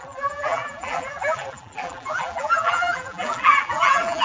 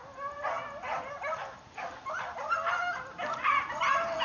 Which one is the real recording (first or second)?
second